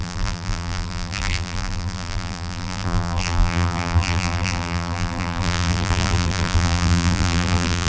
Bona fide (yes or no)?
no